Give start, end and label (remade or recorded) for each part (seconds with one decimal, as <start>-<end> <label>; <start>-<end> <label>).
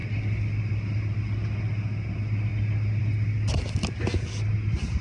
0.0-5.0 recorded